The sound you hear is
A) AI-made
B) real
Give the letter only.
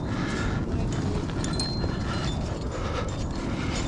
B